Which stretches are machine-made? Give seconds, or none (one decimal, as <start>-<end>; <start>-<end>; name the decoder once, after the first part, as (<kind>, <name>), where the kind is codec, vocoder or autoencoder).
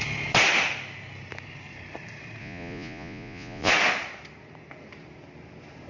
2.4-3.7 (vocoder, Vocos)